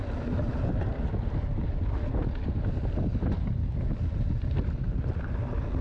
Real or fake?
real